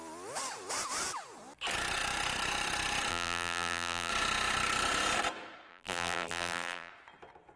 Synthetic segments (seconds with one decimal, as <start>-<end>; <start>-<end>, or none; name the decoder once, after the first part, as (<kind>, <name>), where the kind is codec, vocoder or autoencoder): 3.1-4.1 (vocoder, BigVGAN v2); 5.7-6.9